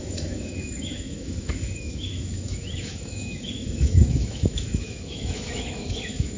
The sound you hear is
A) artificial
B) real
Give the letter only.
A